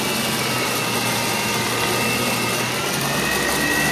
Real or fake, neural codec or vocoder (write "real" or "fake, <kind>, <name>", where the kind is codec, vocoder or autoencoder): real